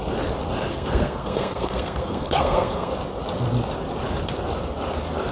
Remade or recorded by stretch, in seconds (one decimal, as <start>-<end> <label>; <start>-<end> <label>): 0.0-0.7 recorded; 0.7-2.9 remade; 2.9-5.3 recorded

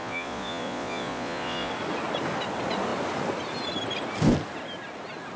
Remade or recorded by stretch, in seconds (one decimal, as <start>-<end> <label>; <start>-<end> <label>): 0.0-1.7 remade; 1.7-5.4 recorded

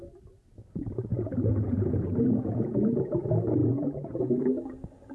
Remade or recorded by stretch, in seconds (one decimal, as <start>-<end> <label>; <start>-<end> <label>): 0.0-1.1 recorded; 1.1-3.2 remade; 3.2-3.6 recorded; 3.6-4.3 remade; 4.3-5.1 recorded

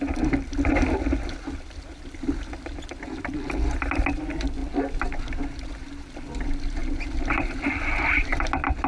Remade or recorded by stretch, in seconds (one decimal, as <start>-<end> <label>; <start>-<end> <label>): 0.0-8.9 recorded

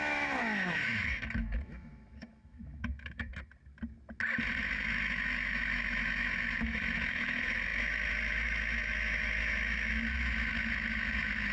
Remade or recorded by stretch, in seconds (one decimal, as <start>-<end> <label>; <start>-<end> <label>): 0.0-3.3 remade; 3.3-4.6 recorded; 4.6-11.5 remade

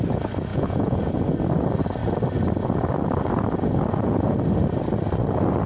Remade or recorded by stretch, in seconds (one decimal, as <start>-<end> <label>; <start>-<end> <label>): 0.0-0.5 recorded; 0.5-1.1 remade; 1.1-5.7 recorded